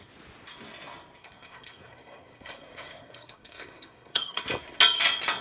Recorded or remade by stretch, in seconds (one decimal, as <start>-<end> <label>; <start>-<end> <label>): 0.0-1.2 recorded; 1.2-4.4 remade; 4.4-5.4 recorded